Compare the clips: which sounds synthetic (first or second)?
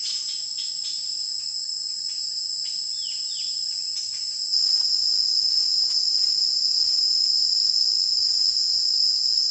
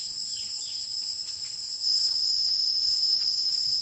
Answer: second